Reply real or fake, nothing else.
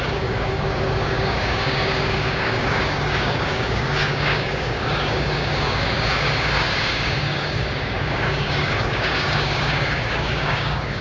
fake